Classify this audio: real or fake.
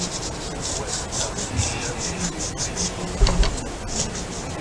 real